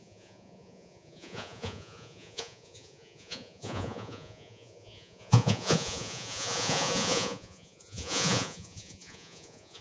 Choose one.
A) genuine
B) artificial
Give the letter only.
B